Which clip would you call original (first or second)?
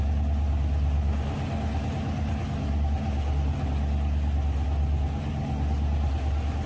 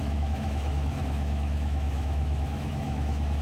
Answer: first